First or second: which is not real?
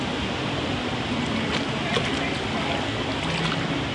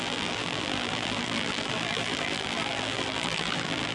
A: second